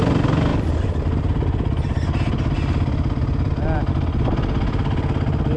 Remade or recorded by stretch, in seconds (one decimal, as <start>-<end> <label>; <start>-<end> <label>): 0.0-5.6 recorded